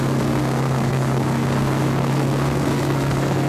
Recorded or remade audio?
remade